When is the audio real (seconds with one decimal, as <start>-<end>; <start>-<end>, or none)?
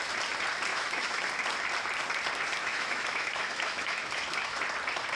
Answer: 0.0-0.7; 1.3-2.6; 4.6-5.2